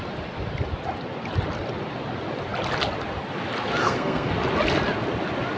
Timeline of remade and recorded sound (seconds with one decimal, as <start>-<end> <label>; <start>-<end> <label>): 0.0-3.8 recorded; 3.8-4.3 remade; 4.3-5.6 recorded